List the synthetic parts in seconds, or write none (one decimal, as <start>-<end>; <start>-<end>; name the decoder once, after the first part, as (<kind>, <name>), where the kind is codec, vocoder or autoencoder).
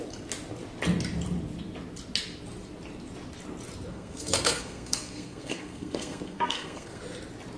3.9-7.0 (codec, SNAC)